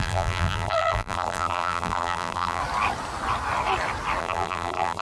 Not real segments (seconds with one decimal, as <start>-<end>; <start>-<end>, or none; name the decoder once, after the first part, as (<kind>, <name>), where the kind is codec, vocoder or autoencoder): 0.0-2.6 (vocoder, BigVGAN v2); 4.2-5.0